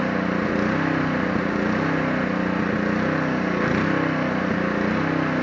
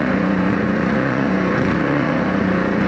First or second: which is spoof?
second